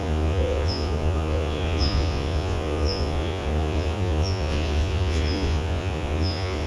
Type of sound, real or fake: fake